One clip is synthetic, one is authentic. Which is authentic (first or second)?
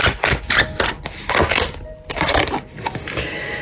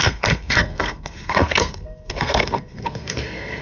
first